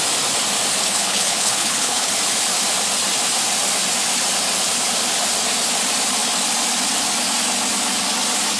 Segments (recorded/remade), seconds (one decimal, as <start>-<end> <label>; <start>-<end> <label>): 0.0-0.8 recorded; 0.8-2.1 remade; 2.1-8.6 recorded